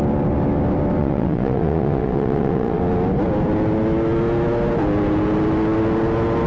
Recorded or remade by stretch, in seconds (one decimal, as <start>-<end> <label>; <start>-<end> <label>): 0.0-1.0 recorded; 1.0-2.8 remade; 2.8-6.5 recorded